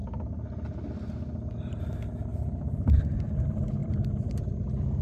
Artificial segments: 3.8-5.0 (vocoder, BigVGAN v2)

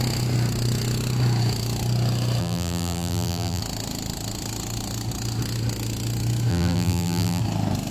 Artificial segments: 2.4-3.6 (vocoder, BigVGAN v2); 6.5-7.4

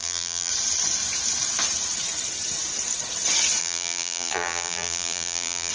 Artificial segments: 0.0-0.5 (vocoder, BigVGAN v2); 3.6-5.7

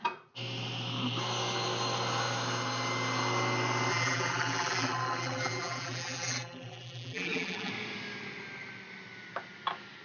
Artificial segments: 3.9-7.7 (vocoder, BigVGAN v2)